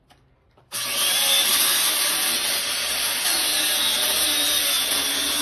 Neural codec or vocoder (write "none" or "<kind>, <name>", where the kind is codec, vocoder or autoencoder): vocoder, BigVGAN v2